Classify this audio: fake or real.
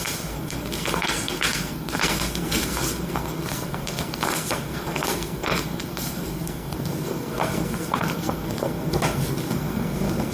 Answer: fake